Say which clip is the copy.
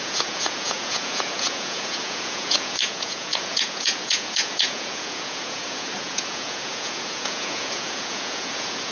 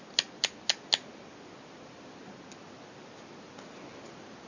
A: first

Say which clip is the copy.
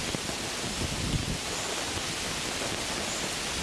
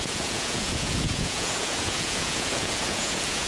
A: second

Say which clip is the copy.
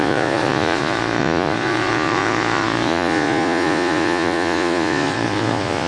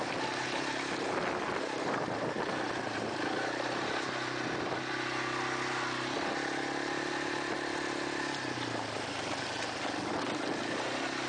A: first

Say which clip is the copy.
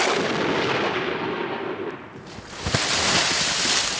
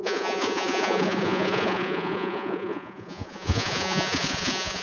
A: second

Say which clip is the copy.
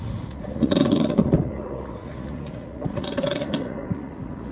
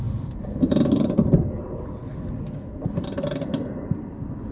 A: first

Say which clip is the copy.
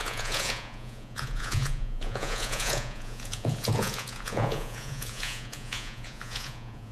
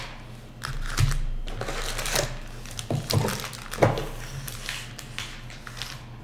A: first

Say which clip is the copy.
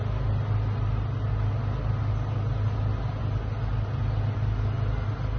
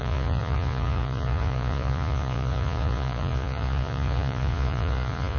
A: second